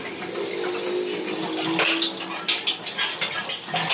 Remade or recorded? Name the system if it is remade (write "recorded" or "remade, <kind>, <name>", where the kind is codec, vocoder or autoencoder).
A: recorded